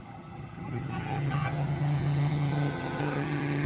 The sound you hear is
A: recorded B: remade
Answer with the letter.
B